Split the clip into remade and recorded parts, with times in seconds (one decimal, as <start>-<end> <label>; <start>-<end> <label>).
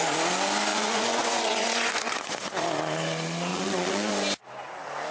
0.0-0.7 recorded; 0.7-2.3 remade; 2.3-3.5 recorded; 3.5-4.1 remade; 4.1-5.1 recorded